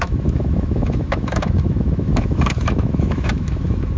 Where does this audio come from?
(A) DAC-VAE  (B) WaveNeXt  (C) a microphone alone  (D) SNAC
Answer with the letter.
A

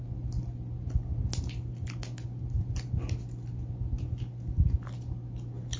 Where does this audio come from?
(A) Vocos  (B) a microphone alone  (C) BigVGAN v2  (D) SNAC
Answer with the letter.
B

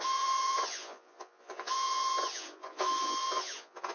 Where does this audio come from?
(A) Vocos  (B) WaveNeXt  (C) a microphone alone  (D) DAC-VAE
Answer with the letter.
A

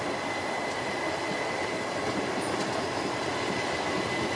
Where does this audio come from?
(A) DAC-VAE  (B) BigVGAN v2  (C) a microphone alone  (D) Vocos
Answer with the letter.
C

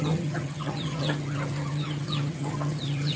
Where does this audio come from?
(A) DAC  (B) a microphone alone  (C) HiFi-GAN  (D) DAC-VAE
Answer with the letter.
C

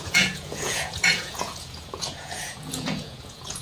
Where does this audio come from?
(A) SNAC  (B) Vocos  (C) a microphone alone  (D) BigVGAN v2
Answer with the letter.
B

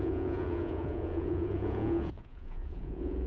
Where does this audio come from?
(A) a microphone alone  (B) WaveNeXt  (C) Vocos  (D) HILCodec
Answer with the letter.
C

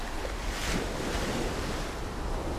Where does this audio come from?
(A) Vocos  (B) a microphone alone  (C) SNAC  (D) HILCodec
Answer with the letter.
B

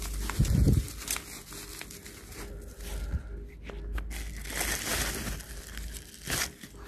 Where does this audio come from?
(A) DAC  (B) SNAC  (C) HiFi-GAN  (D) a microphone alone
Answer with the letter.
D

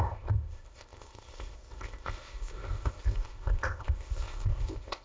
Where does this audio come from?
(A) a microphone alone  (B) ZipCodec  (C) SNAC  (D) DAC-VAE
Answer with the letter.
B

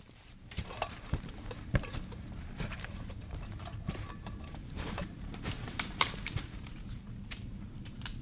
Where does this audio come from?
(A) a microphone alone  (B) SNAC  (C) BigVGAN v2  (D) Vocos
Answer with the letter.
C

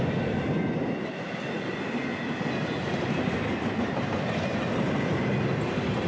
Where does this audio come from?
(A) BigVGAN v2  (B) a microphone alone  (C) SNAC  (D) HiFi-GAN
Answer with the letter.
B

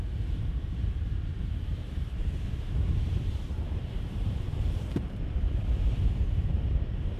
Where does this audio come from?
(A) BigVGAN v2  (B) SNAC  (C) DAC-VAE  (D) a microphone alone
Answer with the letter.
A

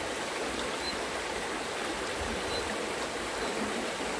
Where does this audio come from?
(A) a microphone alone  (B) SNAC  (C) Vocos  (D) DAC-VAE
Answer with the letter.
A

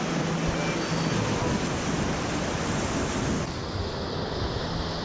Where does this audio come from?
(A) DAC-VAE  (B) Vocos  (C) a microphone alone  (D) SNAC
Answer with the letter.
C